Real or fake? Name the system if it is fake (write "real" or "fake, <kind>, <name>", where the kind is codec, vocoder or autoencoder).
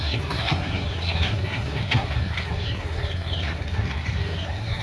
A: fake, codec, SNAC